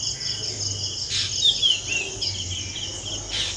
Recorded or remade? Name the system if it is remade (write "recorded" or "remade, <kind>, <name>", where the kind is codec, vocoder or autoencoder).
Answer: recorded